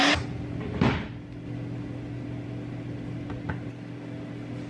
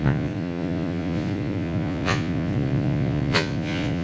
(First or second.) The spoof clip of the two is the second